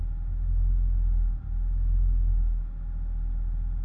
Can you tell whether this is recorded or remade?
recorded